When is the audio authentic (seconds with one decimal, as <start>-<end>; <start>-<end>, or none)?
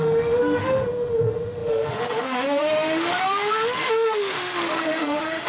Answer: none